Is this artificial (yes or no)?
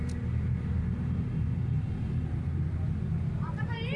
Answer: no